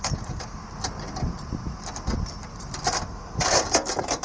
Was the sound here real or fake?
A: real